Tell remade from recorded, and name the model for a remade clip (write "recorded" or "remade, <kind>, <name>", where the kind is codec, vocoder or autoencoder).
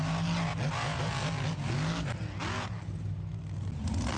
recorded